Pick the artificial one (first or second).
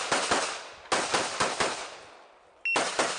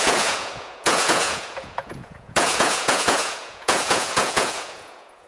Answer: second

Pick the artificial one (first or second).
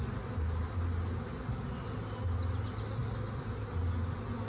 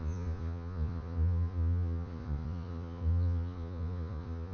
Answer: second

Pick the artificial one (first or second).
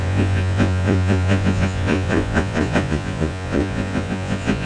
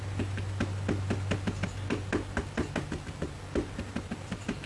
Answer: first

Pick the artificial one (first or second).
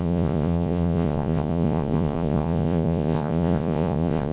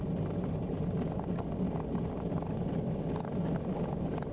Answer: first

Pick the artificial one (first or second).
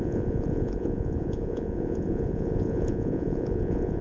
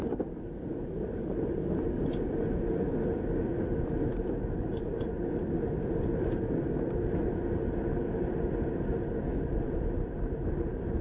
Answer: first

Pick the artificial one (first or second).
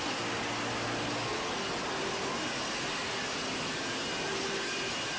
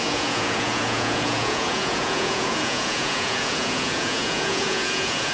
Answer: second